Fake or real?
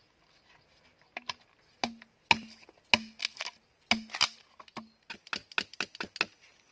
real